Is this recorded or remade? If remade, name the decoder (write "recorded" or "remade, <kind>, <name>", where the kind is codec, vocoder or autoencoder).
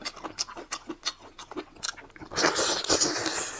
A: recorded